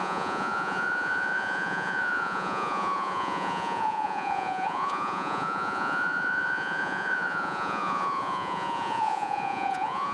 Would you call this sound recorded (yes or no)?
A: no